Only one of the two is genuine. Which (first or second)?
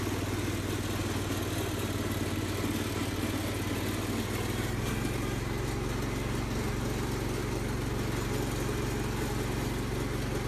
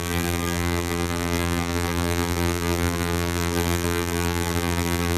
first